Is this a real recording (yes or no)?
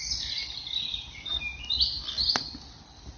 yes